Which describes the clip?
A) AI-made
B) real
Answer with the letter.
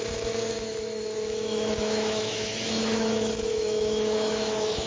A